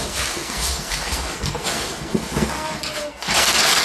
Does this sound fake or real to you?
fake